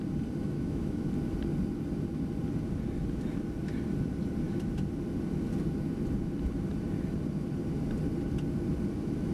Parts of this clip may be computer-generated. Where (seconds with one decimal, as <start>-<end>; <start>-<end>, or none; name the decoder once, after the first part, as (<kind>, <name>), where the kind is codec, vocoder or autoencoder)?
0.4-1.1 (autoencoder, DAC-VAE)

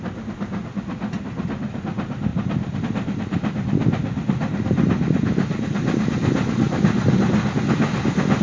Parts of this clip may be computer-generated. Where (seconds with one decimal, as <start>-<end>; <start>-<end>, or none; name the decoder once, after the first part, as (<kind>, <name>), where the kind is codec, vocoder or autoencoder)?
none

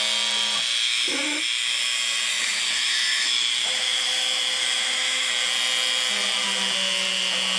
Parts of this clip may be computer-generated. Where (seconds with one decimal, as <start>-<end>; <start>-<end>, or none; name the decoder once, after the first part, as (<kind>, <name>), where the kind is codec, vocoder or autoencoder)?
0.8-1.8 (autoencoder, DAC-VAE); 2.3-5.3